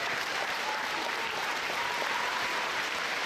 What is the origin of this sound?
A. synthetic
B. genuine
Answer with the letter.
A